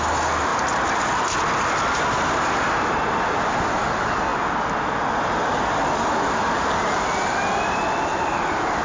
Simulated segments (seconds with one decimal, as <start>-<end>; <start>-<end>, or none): 8.1-8.8